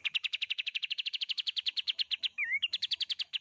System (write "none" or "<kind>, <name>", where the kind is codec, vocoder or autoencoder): autoencoder, DAC-VAE